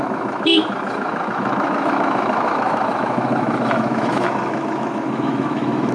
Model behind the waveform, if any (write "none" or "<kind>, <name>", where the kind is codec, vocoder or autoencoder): autoencoder, DAC-VAE